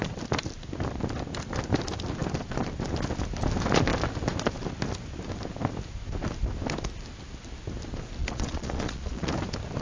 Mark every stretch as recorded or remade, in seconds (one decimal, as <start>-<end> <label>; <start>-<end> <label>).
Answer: 0.0-8.2 recorded; 8.2-9.3 remade; 9.3-9.8 recorded